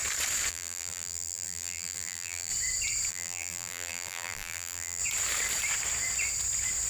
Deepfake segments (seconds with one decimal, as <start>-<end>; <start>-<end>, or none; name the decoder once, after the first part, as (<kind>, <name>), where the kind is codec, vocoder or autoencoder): 0.5-2.5 (vocoder, BigVGAN v2); 3.1-5.0